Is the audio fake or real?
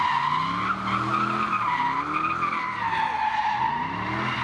real